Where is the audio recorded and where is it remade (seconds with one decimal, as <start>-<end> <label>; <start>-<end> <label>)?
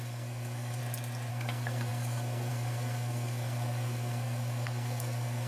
0.0-0.8 remade; 0.8-1.3 recorded; 1.3-5.5 remade